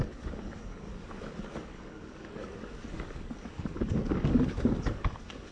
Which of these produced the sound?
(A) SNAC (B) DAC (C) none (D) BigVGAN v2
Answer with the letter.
B